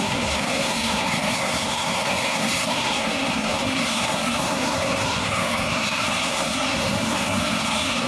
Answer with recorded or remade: remade